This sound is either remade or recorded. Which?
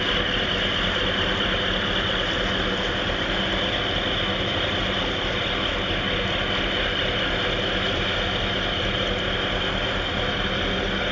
recorded